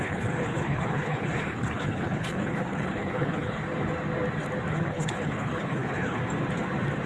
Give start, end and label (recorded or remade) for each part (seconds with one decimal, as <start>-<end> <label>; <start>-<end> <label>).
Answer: 0.0-3.6 remade; 3.6-4.7 recorded; 4.7-6.2 remade; 6.2-7.1 recorded